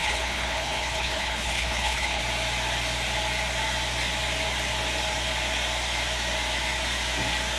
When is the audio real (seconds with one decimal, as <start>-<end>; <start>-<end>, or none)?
2.2-7.6